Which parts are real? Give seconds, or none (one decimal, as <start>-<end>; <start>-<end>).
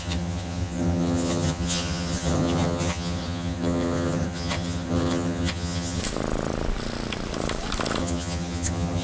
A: 6.0-8.0